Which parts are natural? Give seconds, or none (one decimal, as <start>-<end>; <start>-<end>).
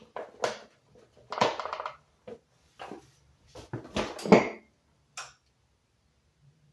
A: 0.0-6.7